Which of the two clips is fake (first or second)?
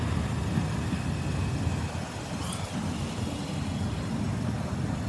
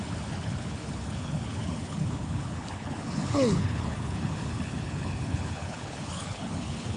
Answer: second